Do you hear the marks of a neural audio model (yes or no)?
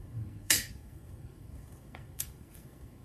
yes